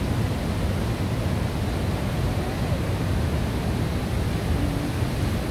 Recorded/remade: recorded